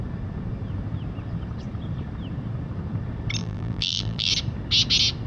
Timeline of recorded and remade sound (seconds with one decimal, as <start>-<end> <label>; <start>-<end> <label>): 0.0-3.4 recorded; 3.4-4.3 remade; 4.3-5.3 recorded